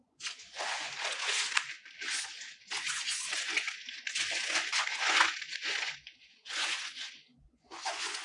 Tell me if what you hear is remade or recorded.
remade